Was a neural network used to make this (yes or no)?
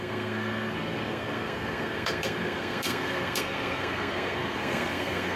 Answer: yes